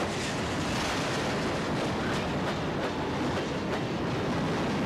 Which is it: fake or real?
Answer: real